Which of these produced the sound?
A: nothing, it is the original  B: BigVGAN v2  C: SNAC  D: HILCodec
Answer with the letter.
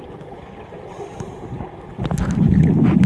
A